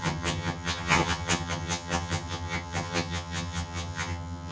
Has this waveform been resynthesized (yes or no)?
yes